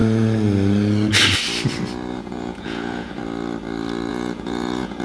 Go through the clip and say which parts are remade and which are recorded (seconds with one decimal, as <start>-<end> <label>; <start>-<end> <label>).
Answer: 0.0-2.1 recorded; 2.1-3.2 remade; 3.2-4.1 recorded; 4.1-5.0 remade